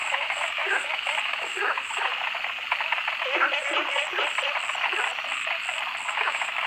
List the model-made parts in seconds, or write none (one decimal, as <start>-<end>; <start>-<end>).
0.0-2.1; 6.1-6.7